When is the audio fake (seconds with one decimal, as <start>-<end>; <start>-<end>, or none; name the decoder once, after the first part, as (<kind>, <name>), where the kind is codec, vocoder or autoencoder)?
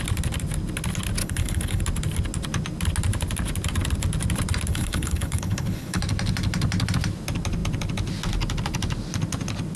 1.2-1.8 (codec, HILCodec); 4.7-6.0